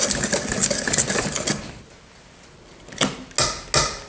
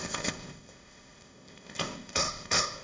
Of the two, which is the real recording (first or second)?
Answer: first